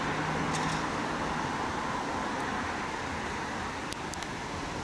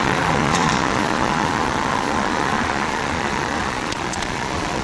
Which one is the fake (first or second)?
second